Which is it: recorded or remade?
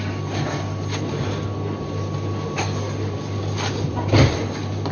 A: recorded